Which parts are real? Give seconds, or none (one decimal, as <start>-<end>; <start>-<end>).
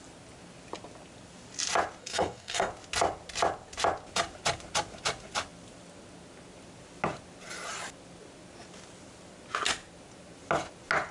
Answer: 0.0-2.0; 2.7-11.1